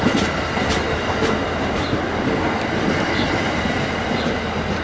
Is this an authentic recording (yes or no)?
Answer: yes